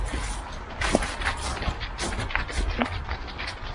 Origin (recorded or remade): recorded